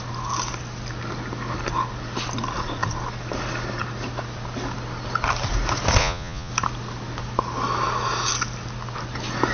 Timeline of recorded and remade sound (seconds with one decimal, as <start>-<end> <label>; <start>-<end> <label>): 0.0-6.0 recorded; 6.0-6.5 remade; 6.5-9.5 recorded